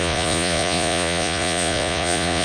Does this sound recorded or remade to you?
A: remade